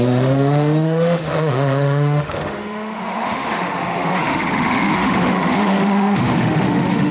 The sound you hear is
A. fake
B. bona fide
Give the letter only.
A